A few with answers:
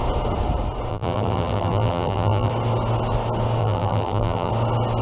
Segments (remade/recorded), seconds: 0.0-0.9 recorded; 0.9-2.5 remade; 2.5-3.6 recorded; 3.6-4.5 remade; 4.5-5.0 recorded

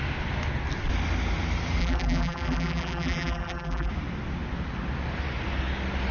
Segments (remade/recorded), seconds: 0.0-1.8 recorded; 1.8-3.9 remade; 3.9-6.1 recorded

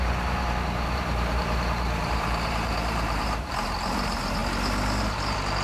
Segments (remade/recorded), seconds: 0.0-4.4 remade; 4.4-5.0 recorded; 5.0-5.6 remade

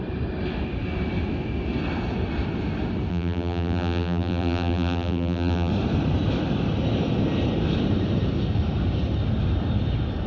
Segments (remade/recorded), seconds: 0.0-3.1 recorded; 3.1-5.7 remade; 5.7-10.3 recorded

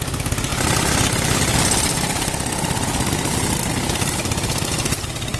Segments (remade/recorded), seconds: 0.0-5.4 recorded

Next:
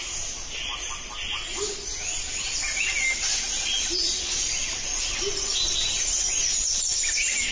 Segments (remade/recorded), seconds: 0.0-7.5 recorded

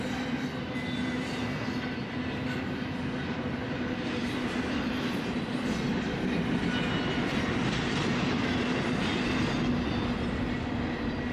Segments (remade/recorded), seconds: 0.0-3.6 recorded; 3.6-4.3 remade; 4.3-11.3 recorded

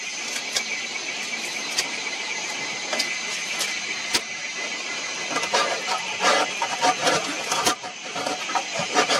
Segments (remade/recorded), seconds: 0.0-1.6 recorded; 1.6-2.3 remade; 2.3-7.3 recorded; 7.3-8.2 remade; 8.2-9.2 recorded